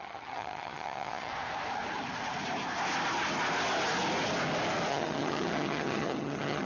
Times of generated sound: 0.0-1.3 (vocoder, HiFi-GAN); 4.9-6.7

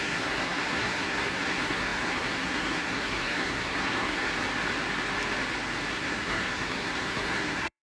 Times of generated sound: 0.0-4.3 (codec, SNAC); 5.9-7.8

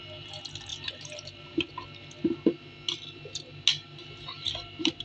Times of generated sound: 0.7-1.7 (vocoder, BigVGAN v2)

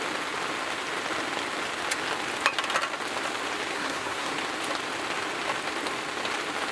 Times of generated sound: 3.7-4.3 (codec, SNAC)